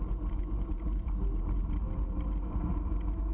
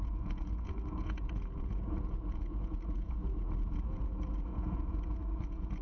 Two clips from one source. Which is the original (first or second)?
first